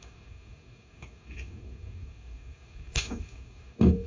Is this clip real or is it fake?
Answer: fake